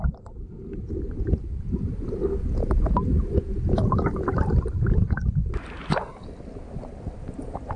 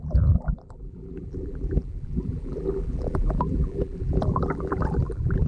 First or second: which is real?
first